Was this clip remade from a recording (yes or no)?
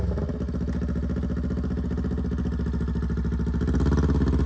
no